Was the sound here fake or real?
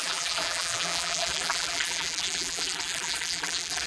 fake